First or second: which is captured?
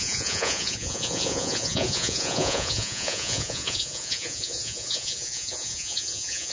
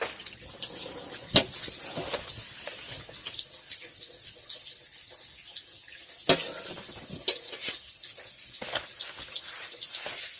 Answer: second